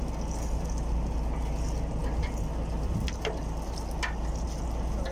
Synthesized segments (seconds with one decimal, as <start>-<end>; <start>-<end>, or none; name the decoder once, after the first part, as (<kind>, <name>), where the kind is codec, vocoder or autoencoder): none